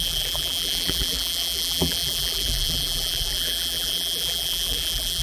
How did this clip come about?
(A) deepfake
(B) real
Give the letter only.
A